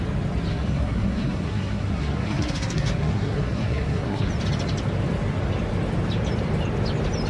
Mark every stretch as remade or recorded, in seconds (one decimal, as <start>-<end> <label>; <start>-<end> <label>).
0.0-0.5 recorded; 0.5-4.3 remade; 4.3-7.3 recorded